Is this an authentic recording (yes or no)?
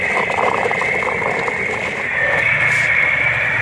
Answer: yes